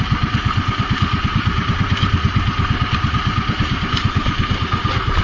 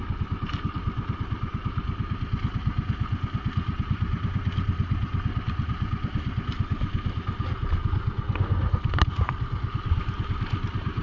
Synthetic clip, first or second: first